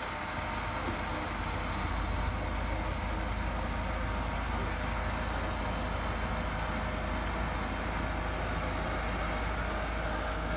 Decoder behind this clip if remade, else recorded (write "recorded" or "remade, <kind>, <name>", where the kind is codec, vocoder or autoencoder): recorded